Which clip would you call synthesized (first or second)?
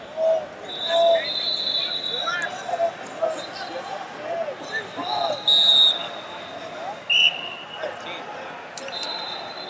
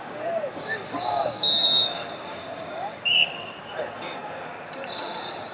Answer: second